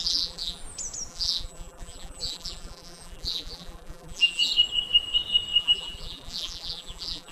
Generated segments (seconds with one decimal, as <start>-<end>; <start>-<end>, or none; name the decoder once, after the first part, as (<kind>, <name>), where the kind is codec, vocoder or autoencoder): 0.0-0.6 (vocoder, BigVGAN v2); 1.1-4.5; 5.6-7.3